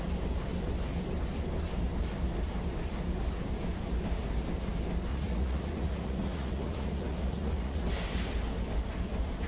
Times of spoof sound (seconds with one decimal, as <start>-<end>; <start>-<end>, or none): 5.1-7.8

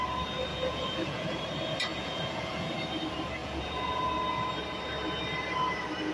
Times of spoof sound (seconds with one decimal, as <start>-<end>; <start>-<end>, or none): 0.5-1.4; 1.9-2.7; 3.4-4.1

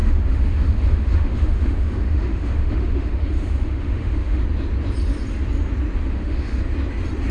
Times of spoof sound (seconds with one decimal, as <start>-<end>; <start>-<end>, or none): 0.0-4.4; 6.0-6.6

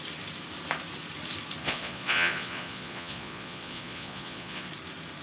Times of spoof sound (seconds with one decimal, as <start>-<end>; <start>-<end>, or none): 1.6-4.7

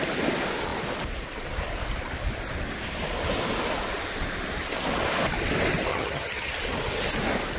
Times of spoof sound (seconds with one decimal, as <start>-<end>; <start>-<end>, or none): 5.9-6.5

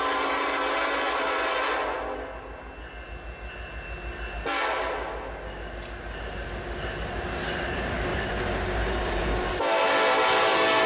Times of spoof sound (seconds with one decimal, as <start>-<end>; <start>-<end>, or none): 8.1-9.5